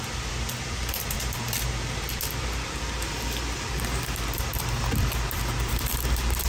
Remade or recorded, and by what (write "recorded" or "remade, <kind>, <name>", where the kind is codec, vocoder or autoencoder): remade, vocoder, BigVGAN v2